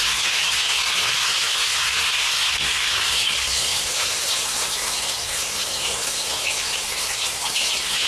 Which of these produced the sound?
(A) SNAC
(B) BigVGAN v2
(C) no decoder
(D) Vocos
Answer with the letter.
A